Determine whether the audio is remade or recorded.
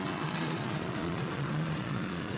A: remade